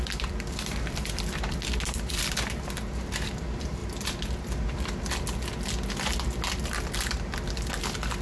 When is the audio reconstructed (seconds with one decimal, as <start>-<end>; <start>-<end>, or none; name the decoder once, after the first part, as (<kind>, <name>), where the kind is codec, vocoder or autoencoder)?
0.0-3.8 (vocoder, BigVGAN v2)